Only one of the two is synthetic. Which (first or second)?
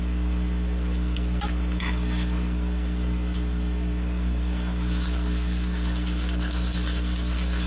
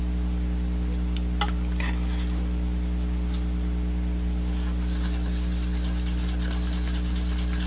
first